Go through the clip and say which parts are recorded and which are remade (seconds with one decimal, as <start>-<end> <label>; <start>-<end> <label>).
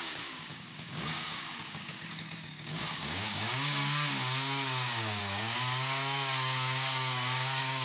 0.0-7.8 remade